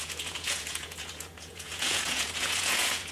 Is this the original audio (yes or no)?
no